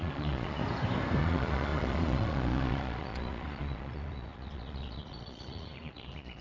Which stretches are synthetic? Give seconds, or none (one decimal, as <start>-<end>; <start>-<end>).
0.0-0.6; 1.2-6.4